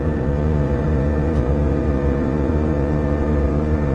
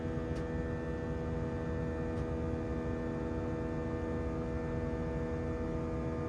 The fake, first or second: first